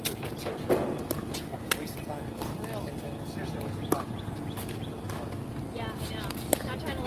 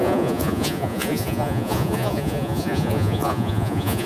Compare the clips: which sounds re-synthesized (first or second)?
second